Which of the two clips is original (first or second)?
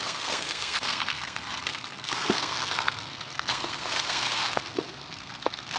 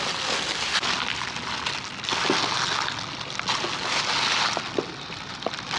second